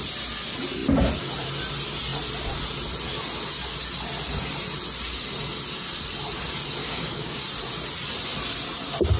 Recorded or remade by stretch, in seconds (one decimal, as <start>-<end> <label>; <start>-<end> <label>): 0.0-6.8 recorded; 6.8-7.4 remade; 7.4-9.2 recorded